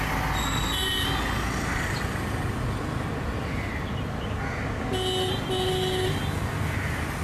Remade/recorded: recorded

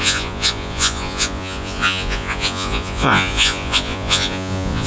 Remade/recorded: remade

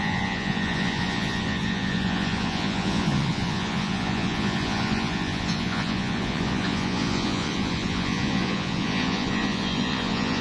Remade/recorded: remade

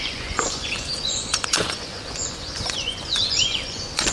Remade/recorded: remade